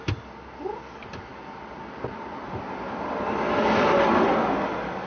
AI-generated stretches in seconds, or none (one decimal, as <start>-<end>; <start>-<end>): none